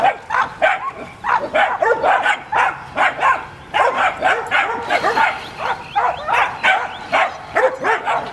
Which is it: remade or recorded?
recorded